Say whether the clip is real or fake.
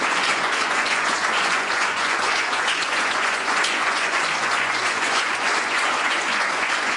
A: fake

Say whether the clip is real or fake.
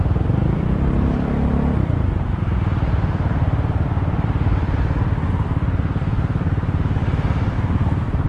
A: fake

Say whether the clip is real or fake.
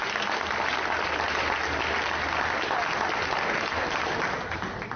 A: real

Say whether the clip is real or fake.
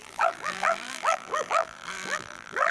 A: fake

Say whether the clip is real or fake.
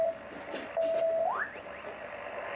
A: real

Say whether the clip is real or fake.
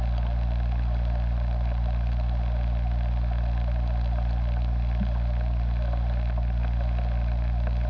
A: real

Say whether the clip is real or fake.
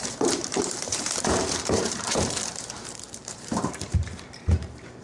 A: fake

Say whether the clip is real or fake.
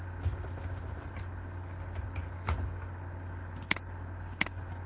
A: real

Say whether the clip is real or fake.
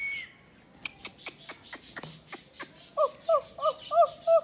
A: real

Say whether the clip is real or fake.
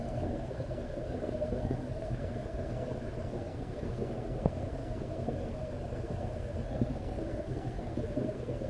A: fake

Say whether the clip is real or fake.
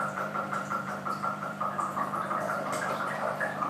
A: fake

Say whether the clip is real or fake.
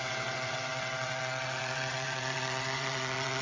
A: fake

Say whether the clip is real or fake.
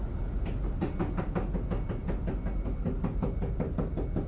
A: real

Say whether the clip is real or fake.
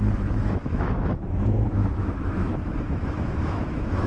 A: fake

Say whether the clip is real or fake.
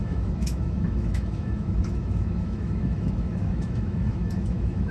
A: fake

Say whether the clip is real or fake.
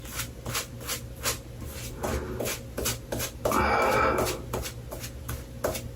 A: real